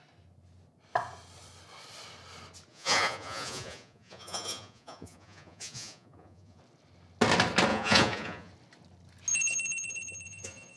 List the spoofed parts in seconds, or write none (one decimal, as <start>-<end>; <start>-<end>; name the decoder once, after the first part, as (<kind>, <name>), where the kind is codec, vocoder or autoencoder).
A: 2.7-6.6 (vocoder, Vocos); 7.7-8.5; 9.3-10.8